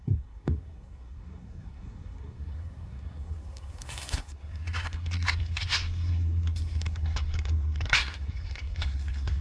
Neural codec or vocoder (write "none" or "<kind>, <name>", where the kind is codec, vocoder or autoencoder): codec, SNAC